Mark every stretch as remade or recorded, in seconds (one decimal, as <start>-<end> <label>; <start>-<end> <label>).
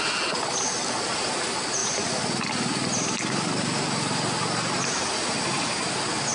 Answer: 0.0-6.3 recorded